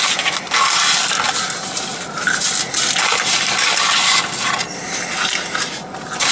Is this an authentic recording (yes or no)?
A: yes